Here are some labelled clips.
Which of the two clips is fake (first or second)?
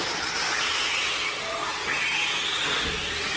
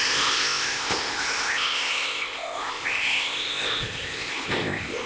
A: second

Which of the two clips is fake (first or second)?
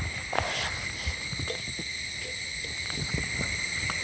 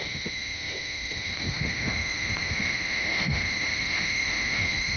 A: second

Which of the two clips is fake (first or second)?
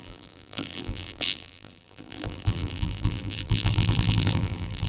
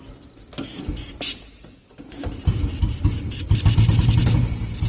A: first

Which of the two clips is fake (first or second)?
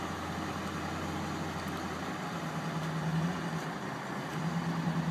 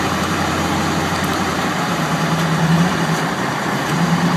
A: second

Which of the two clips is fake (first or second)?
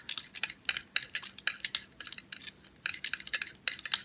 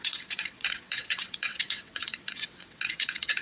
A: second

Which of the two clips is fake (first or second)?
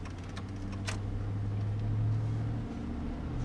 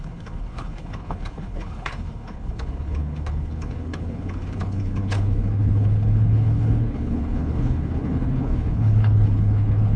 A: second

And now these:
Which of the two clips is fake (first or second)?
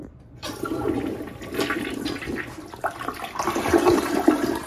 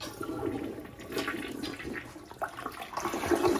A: first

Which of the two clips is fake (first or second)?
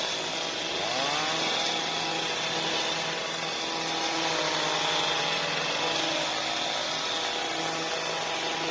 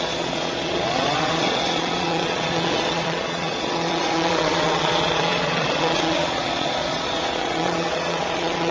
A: second